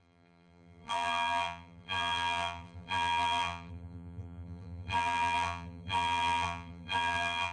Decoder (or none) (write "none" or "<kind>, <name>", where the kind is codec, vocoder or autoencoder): vocoder, BigVGAN v2